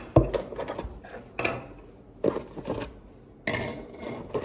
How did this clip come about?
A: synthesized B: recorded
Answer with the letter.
B